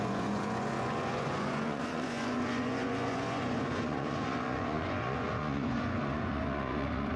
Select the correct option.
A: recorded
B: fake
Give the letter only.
B